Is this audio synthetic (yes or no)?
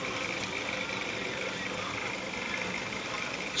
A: yes